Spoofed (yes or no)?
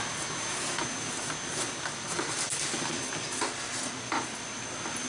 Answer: no